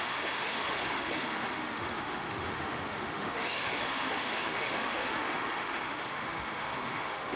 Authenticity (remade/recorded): remade